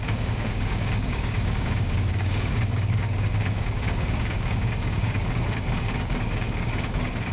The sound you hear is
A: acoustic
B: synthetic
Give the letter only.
B